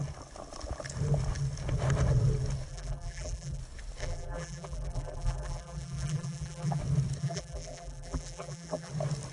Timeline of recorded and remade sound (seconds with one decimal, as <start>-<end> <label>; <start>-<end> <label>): 0.0-2.7 recorded; 2.7-3.6 remade; 3.6-4.0 recorded; 4.0-6.8 remade; 6.8-7.2 recorded; 7.2-8.9 remade; 8.9-9.3 recorded